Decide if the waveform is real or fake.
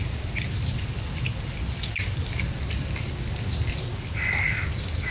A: real